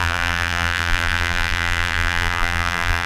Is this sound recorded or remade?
remade